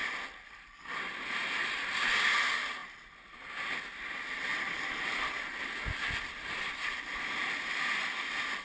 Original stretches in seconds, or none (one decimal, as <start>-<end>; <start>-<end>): 0.0-8.6

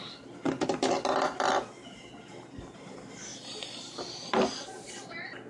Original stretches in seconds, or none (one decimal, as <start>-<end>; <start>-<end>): 0.0-3.3; 5.1-5.5

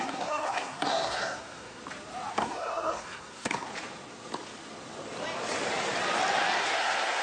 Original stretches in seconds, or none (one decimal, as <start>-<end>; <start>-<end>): 1.8-2.3; 3.7-6.6

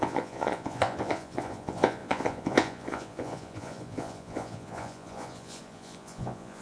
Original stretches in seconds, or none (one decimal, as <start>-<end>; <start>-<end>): none

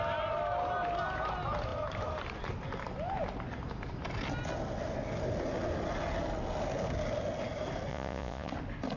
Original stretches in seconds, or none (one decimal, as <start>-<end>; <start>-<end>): 0.0-7.9; 8.5-9.0